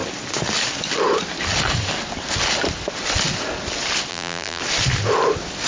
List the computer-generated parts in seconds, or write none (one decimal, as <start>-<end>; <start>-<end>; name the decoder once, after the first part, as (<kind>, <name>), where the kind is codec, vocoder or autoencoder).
4.1-4.6 (vocoder, BigVGAN v2)